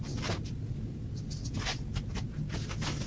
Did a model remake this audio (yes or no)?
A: no